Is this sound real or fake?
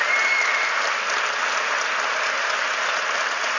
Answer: real